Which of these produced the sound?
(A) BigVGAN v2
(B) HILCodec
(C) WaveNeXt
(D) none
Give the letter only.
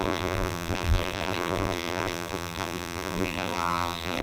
A